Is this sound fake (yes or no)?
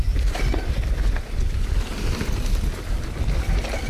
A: no